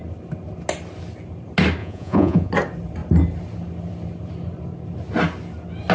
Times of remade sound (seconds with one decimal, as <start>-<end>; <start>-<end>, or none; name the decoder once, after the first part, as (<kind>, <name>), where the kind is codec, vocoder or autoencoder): 1.8-2.5 (vocoder, Vocos)